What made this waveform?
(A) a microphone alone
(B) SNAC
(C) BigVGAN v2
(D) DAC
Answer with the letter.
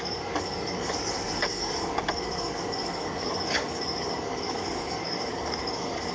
D